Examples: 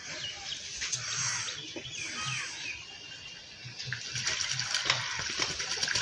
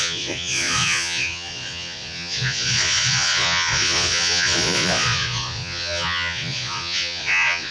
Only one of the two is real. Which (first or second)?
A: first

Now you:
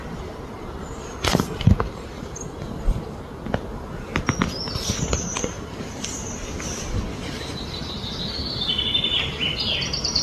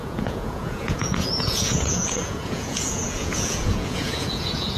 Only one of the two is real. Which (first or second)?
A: first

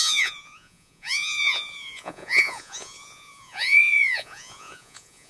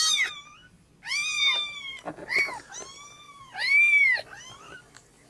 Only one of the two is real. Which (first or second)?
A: second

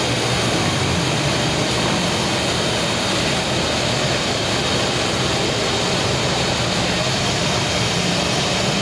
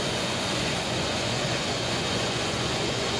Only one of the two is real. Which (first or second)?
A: first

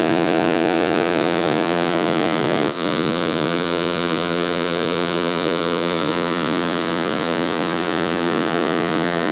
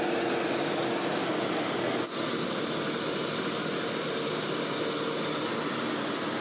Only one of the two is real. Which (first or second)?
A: second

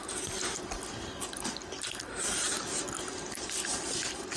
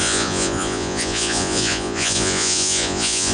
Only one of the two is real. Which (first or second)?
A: first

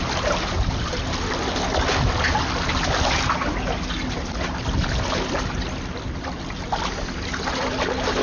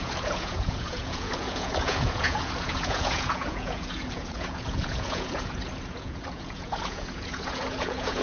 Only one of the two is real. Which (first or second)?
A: first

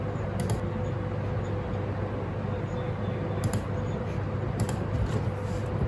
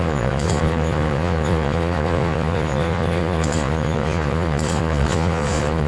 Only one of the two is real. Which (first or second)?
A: first